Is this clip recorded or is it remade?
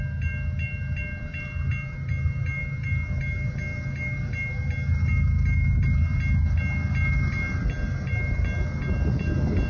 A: recorded